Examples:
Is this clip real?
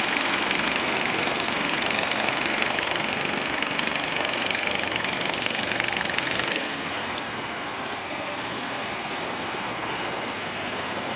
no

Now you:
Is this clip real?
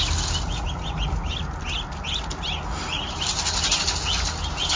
yes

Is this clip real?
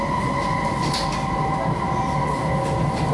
yes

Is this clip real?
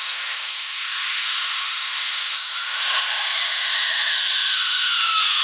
no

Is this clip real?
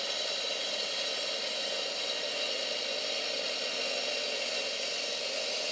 yes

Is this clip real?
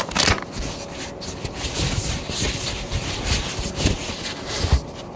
yes